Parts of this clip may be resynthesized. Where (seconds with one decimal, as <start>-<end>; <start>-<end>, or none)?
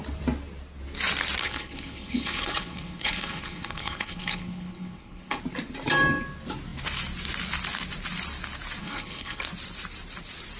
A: 1.4-5.4; 8.8-9.4